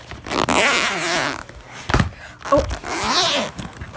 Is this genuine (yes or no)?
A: yes